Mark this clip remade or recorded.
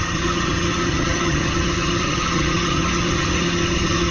remade